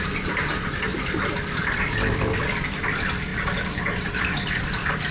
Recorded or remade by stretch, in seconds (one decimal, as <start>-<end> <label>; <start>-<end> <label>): 0.0-5.1 recorded